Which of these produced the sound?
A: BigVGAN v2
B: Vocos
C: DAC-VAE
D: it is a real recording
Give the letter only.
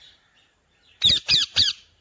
A